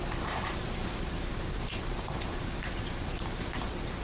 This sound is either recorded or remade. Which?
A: remade